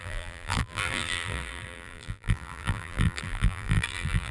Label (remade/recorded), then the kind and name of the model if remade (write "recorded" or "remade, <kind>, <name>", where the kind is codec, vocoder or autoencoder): remade, vocoder, BigVGAN v2